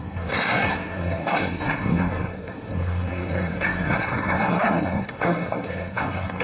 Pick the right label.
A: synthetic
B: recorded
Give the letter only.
A